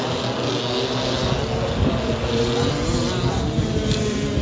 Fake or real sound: real